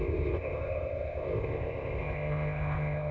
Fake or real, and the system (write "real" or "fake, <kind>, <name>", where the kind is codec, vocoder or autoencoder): fake, codec, ZipCodec